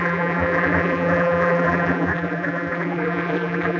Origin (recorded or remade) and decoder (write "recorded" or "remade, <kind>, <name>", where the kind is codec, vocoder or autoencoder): remade, vocoder, BigVGAN v2